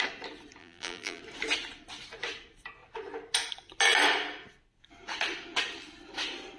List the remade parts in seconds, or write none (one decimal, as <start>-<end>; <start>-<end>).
0.6-1.2